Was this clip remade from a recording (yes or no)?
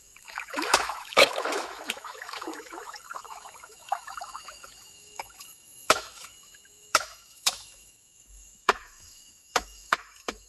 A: yes